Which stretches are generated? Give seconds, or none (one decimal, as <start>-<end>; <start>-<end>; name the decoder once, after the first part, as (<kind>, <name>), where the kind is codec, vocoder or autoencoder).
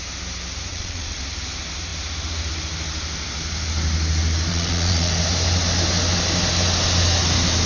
0.7-1.2 (vocoder, Vocos); 4.5-5.1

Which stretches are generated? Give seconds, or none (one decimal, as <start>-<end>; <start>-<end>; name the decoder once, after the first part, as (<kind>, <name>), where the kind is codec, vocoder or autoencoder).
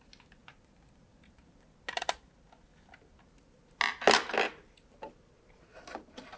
none